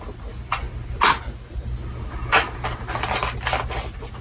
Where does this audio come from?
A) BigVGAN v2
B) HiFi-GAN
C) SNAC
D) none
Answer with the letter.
D